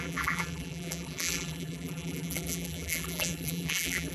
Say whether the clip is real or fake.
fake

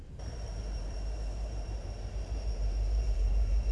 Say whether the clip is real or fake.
fake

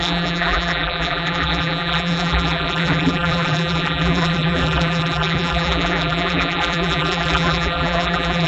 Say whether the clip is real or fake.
fake